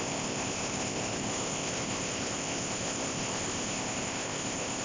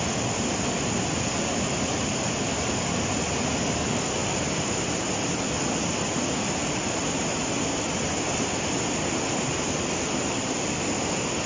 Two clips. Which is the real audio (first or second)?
second